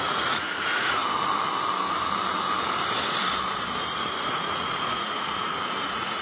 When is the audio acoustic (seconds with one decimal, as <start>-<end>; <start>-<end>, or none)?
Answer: 1.0-4.3